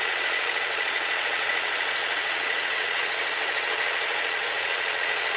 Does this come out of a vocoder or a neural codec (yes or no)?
yes